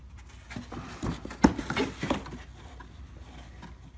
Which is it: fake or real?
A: real